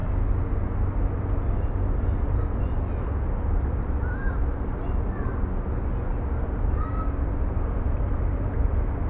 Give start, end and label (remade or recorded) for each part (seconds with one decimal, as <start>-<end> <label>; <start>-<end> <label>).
0.0-9.1 recorded